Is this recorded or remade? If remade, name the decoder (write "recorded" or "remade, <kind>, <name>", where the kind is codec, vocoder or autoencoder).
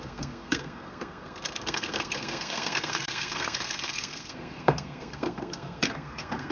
remade, codec, SNAC